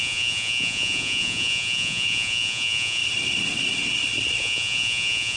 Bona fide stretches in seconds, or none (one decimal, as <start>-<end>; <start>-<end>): 3.0-4.4